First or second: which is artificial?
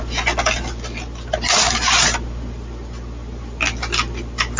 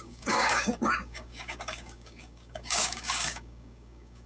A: second